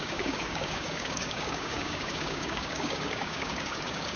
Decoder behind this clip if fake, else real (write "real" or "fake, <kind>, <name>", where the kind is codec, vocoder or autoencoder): fake, codec, DAC